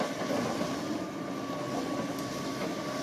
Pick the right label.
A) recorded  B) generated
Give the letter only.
A